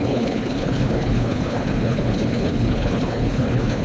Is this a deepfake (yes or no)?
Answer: yes